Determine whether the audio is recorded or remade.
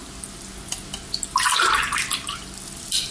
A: recorded